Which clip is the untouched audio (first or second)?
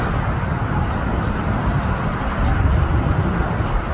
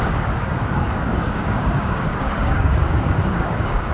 first